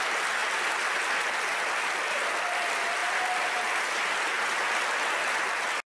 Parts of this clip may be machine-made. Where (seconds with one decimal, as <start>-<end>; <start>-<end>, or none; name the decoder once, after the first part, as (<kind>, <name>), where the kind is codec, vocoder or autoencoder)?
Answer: none